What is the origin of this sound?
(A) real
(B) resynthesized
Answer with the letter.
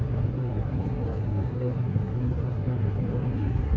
B